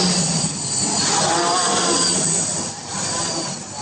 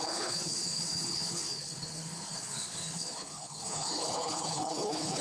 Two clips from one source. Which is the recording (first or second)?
first